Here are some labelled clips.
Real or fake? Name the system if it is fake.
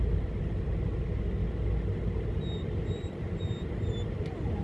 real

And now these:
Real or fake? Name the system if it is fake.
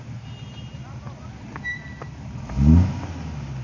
real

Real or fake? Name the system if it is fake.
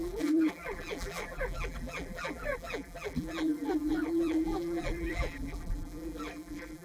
fake, vocoder, BigVGAN v2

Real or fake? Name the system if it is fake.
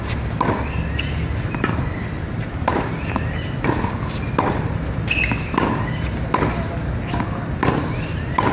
real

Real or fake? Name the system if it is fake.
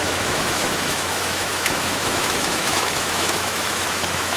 fake, autoencoder, DAC-VAE